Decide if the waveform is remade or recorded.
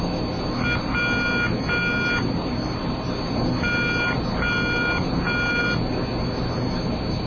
recorded